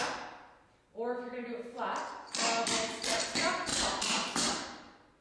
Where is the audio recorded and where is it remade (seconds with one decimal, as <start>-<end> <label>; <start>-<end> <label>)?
0.0-5.2 recorded